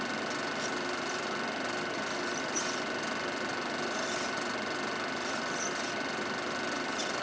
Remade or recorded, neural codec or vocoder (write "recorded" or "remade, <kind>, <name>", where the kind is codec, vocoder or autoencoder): recorded